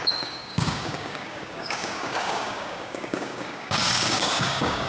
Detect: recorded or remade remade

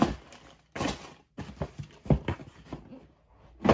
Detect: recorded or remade recorded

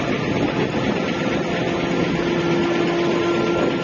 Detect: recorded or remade recorded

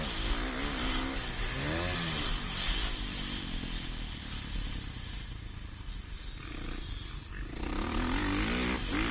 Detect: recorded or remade recorded